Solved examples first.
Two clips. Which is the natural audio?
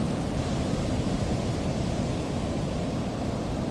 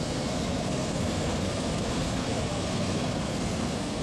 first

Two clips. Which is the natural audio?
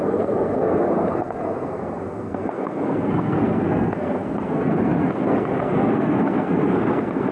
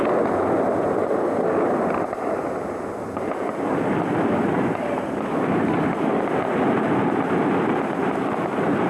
second